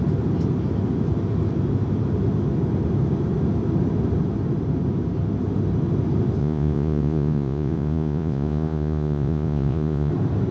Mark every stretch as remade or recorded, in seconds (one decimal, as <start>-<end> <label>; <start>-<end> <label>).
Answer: 0.0-6.4 recorded; 6.4-10.1 remade; 10.1-10.5 recorded